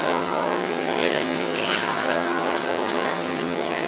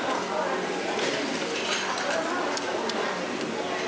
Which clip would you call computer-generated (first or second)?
first